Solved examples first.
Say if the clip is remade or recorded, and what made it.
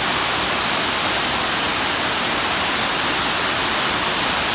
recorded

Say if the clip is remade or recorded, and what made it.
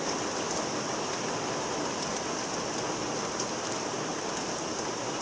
recorded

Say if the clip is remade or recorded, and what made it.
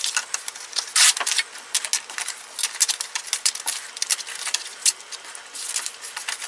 recorded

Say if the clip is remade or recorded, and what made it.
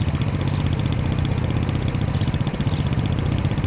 recorded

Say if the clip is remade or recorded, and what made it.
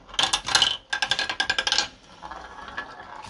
recorded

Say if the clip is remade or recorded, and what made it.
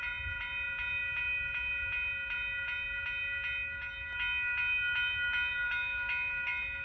recorded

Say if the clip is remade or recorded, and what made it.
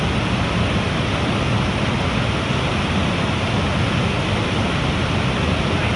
recorded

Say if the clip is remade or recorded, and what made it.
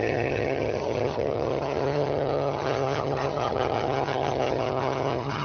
remade, vocoder, HiFi-GAN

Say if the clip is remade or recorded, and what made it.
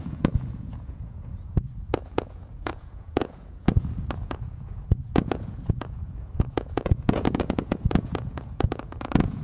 remade, vocoder, Vocos